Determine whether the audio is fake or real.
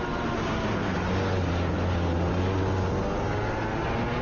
real